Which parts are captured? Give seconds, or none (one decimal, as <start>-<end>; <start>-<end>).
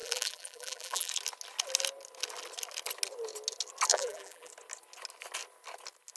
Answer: 1.1-3.9; 4.5-6.2